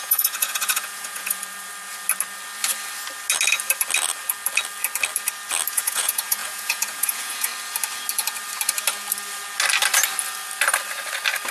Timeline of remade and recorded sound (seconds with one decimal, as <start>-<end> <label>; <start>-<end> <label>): 0.0-1.4 remade; 1.4-5.7 recorded; 5.7-7.5 remade; 7.5-11.5 recorded